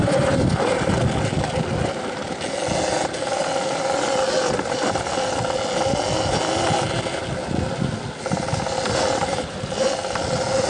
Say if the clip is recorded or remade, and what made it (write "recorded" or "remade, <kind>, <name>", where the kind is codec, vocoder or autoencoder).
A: recorded